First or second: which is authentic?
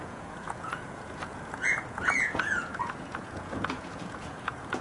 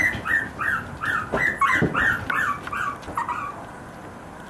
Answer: second